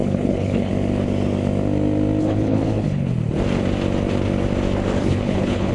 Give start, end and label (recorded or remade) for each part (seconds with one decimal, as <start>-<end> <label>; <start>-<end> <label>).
0.0-0.7 remade; 0.7-2.2 recorded; 2.2-3.1 remade; 3.1-5.0 recorded; 5.0-5.7 remade